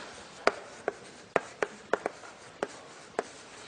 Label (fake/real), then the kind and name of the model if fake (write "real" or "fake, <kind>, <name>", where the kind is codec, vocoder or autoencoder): real